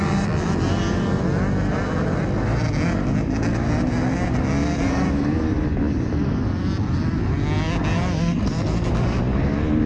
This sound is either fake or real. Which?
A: real